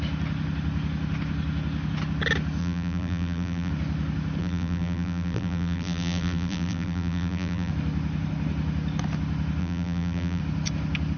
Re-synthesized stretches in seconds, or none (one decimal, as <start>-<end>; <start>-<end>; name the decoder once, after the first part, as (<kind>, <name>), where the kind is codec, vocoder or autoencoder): 2.6-3.7 (vocoder, BigVGAN v2); 4.4-7.7; 9.6-10.4